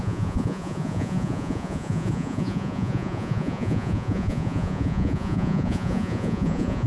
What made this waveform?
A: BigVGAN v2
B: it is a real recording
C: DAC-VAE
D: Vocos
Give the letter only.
D